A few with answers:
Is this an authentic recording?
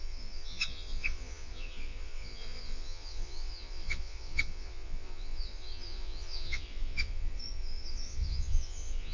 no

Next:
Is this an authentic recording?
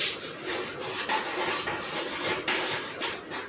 yes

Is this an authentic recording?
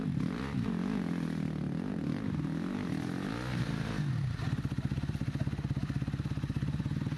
yes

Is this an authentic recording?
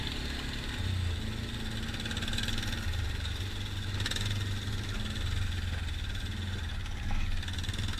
yes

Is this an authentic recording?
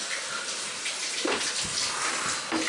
yes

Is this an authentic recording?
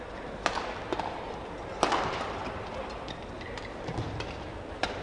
yes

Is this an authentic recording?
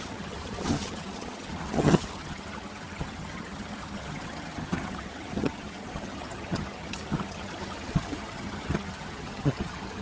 no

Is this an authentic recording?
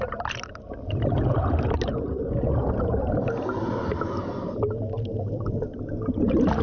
yes